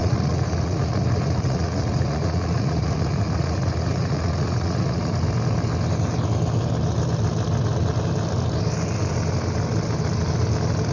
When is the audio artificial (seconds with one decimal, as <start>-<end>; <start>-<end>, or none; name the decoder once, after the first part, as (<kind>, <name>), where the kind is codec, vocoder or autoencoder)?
0.0-5.1 (vocoder, Vocos)